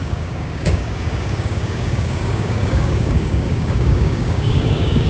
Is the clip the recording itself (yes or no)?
no